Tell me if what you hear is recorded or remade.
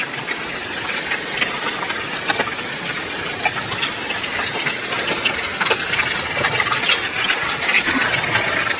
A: recorded